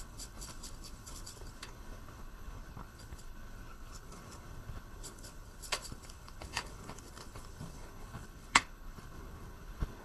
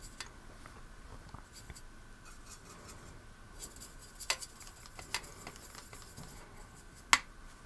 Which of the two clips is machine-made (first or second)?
first